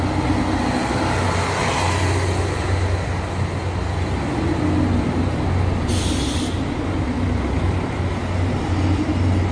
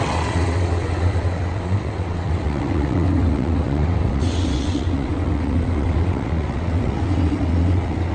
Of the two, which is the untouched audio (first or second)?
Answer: first